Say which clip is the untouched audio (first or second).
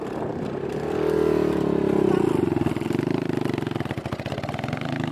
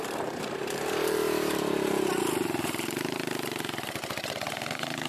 first